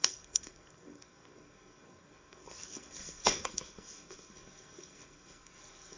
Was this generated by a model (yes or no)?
yes